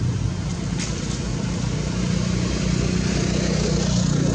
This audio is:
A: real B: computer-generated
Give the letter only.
A